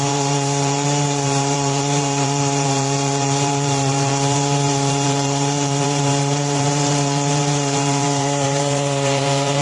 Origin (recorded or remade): remade